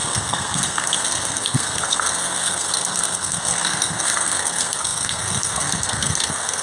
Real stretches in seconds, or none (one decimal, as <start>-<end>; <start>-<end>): none